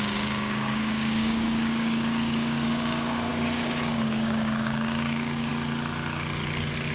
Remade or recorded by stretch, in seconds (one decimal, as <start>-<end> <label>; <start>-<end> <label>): 0.0-5.5 remade; 5.5-6.9 recorded